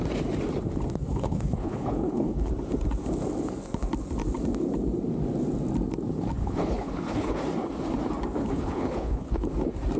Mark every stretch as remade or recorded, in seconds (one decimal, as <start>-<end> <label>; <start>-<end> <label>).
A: 0.0-1.1 recorded; 1.1-2.5 remade; 2.5-6.4 recorded; 6.4-7.4 remade; 7.4-8.4 recorded; 8.4-9.5 remade; 9.5-10.0 recorded